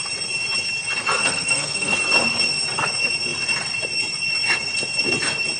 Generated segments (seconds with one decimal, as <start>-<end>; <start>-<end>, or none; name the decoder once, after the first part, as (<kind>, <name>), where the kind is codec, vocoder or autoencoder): 1.2-1.9 (codec, SNAC)